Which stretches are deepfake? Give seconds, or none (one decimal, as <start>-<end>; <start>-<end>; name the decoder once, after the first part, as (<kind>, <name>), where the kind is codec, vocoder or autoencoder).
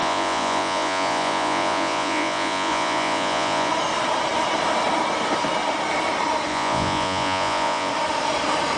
0.0-3.7 (vocoder, Vocos); 6.5-7.9